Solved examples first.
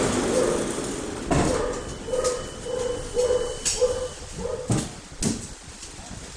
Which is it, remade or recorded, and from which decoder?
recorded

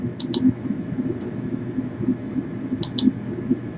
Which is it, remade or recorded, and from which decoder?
remade, autoencoder, DAC-VAE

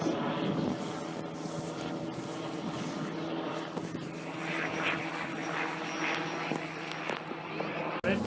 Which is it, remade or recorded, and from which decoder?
recorded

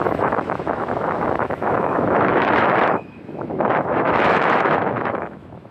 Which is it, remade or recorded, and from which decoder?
remade, autoencoder, DAC-VAE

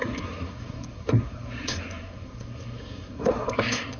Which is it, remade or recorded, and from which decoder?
remade, codec, SNAC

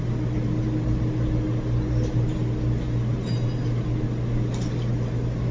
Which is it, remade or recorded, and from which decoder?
recorded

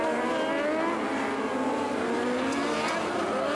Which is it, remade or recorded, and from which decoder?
recorded